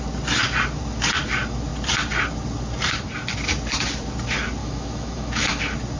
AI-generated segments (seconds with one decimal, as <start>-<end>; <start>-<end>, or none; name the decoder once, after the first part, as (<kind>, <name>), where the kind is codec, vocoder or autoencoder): 4.6-5.6 (autoencoder, DAC-VAE)